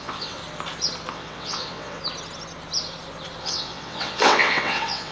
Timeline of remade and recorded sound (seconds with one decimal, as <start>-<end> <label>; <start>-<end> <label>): 0.0-0.4 remade; 0.4-1.1 recorded; 1.1-2.0 remade; 2.0-3.4 recorded; 3.4-5.1 remade